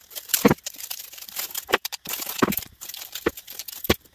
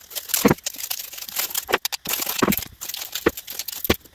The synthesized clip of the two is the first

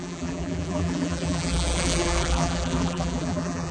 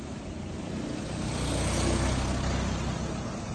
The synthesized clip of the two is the first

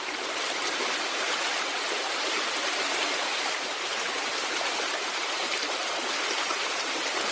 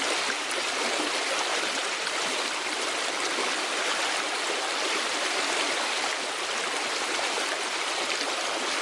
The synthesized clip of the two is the first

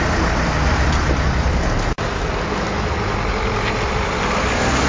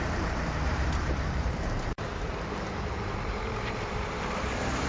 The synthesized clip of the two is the second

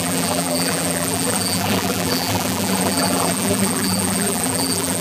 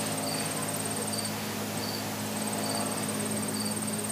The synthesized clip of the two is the first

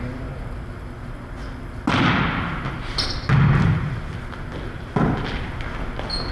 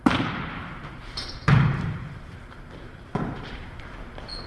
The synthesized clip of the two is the second